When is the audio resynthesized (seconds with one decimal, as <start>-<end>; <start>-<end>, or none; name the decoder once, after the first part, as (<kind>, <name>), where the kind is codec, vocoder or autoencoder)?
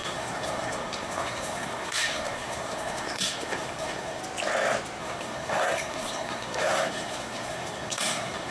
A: 0.0-4.2 (codec, SNAC); 5.0-8.5